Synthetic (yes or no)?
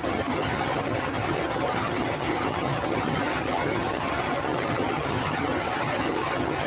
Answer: yes